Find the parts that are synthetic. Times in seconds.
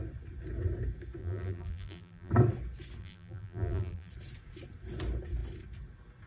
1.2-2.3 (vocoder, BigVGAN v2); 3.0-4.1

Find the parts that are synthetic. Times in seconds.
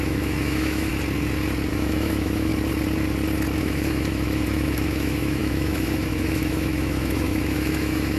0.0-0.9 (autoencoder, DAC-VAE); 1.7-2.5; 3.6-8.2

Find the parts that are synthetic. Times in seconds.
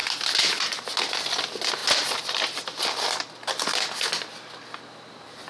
none